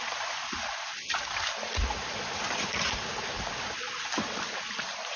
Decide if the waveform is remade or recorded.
recorded